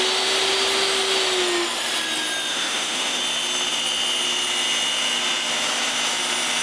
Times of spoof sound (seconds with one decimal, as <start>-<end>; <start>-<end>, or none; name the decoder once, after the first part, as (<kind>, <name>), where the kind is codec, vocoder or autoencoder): 2.5-3.2 (autoencoder, DAC-VAE)